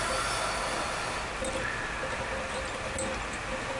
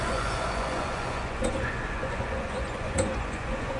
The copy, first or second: second